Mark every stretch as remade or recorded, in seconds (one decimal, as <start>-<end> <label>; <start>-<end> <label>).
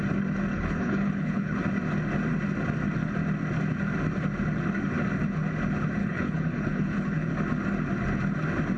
0.0-0.5 recorded; 0.5-1.6 remade; 1.6-6.0 recorded; 6.0-7.3 remade; 7.3-8.8 recorded